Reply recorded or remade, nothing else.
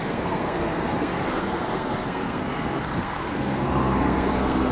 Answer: remade